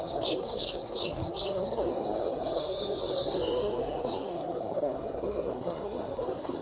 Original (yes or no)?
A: no